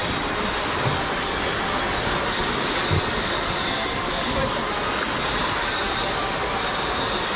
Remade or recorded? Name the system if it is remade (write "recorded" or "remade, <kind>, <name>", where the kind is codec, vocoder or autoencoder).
recorded